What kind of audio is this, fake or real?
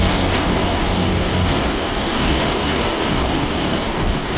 fake